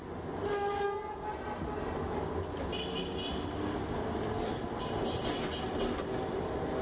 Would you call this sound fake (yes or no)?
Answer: no